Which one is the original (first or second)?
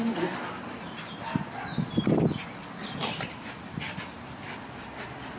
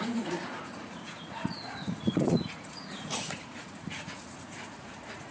first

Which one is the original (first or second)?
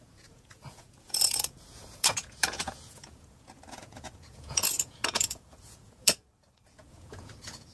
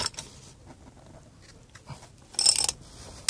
second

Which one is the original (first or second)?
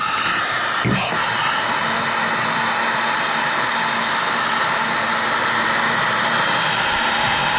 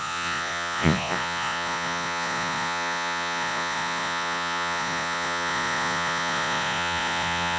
first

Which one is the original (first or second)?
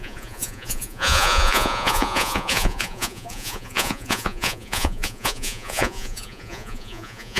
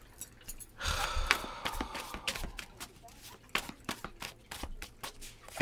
second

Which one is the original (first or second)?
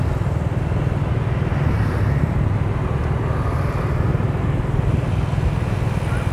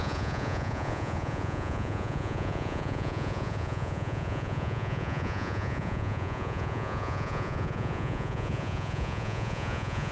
first